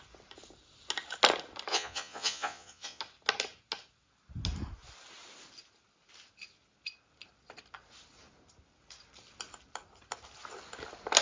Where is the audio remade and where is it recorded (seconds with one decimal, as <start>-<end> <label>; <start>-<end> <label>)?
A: 0.0-1.7 recorded; 1.7-3.0 remade; 3.0-11.2 recorded